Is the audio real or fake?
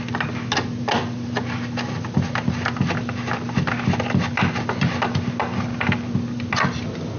real